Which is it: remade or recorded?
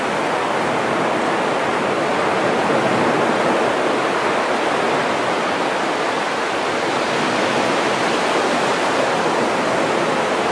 recorded